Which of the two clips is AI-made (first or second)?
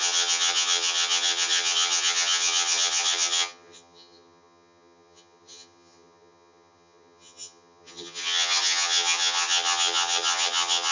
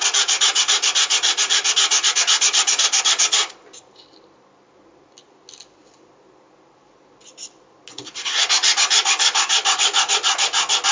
first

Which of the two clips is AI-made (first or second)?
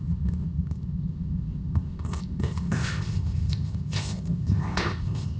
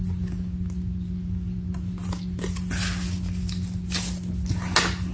first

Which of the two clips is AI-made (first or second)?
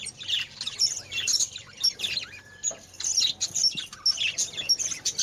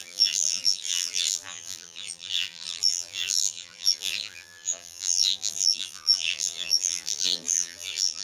second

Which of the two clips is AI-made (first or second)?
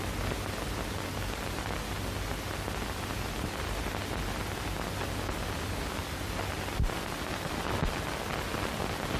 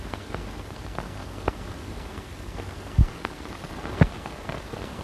second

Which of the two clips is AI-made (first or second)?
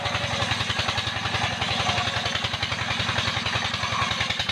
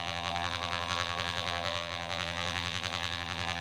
second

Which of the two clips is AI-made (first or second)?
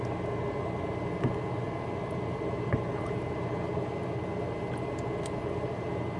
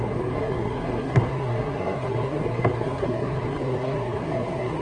second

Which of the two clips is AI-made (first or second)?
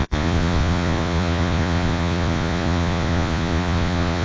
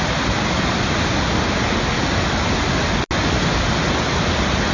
first